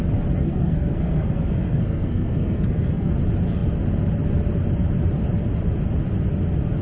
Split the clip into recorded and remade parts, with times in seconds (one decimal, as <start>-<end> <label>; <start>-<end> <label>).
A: 0.0-0.4 recorded; 0.4-3.1 remade; 3.1-6.8 recorded